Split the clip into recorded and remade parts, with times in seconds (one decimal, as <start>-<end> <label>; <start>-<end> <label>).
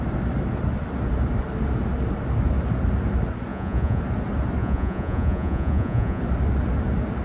0.0-3.5 recorded; 3.5-4.0 remade; 4.0-4.6 recorded; 4.6-6.2 remade; 6.2-7.2 recorded